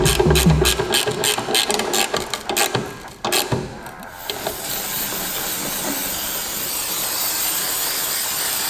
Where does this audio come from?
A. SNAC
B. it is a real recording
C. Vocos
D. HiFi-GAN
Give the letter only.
B